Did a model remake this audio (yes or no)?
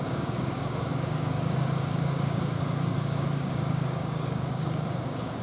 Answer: yes